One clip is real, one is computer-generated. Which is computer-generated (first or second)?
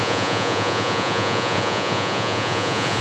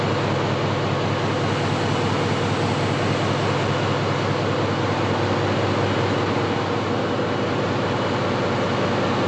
first